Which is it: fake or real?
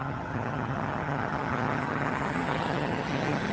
fake